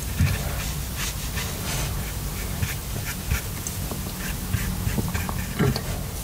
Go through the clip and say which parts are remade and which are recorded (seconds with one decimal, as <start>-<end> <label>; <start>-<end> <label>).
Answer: 0.0-2.8 recorded; 2.8-3.3 remade; 3.3-4.9 recorded; 4.9-6.2 remade